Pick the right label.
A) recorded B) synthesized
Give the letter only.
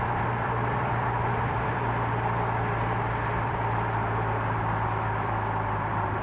B